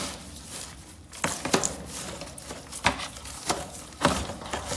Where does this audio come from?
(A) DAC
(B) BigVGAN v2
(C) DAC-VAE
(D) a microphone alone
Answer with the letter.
D